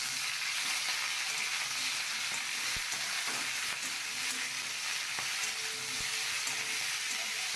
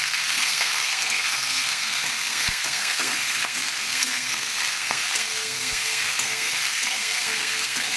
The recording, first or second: first